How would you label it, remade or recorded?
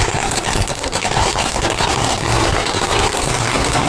remade